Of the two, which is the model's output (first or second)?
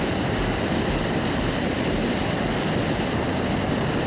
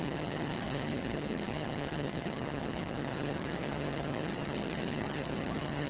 second